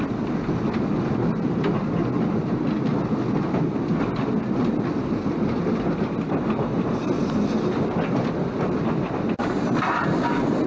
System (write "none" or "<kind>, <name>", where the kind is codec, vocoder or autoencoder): none